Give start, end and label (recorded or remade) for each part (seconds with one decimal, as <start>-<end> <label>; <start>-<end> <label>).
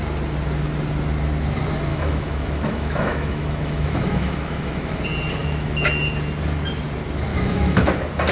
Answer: 0.0-1.9 recorded; 1.9-5.0 remade; 5.0-5.4 recorded; 5.4-6.0 remade; 6.0-7.3 recorded; 7.3-7.9 remade; 7.9-8.3 recorded